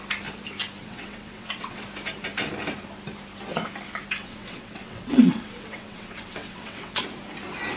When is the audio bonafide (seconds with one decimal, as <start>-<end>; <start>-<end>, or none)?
0.0-0.8; 1.8-4.2; 7.0-7.8